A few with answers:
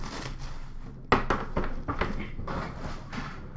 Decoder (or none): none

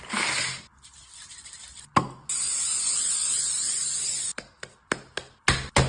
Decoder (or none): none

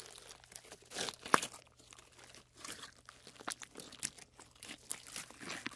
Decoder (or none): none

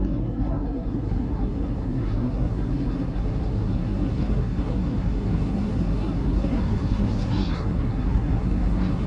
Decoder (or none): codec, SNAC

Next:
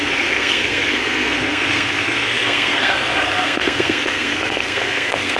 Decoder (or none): codec, SNAC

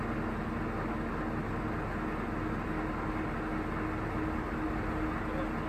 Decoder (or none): none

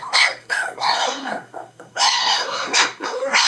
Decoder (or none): codec, SNAC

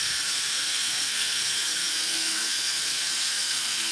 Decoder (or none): codec, SNAC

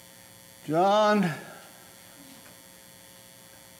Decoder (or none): none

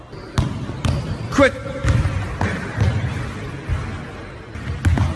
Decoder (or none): none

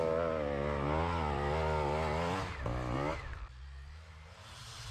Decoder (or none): none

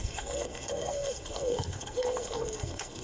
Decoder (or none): codec, SNAC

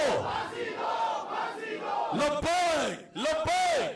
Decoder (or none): none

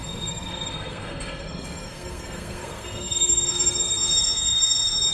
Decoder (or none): codec, SNAC